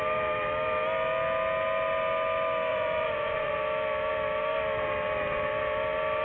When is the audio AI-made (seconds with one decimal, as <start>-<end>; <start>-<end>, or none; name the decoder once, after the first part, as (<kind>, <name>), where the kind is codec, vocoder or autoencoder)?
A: 2.7-3.6 (vocoder, Vocos)